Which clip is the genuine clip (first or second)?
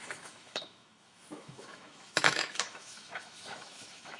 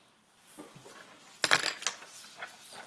second